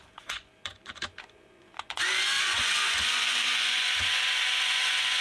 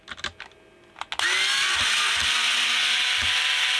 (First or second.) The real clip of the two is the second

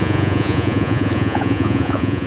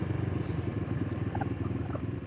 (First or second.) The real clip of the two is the second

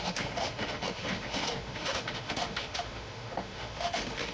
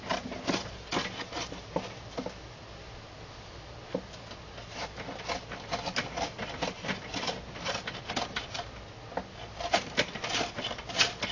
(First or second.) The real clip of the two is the second